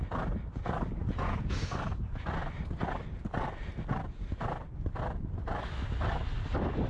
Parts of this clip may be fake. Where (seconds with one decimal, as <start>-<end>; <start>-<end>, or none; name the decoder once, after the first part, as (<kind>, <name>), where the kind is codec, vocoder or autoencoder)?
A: 1.0-1.7 (vocoder, Vocos)